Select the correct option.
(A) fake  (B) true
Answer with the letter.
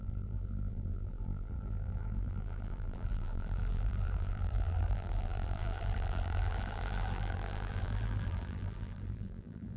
A